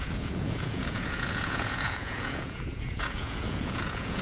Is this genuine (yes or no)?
no